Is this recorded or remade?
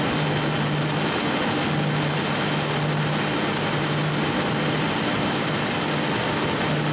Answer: recorded